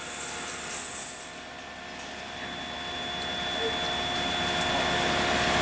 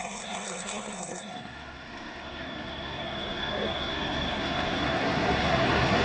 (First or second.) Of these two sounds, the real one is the first